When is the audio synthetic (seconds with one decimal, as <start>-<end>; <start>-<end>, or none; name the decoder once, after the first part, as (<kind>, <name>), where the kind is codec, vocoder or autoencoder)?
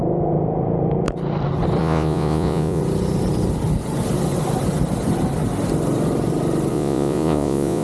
1.8-2.8 (vocoder, Vocos); 6.7-7.8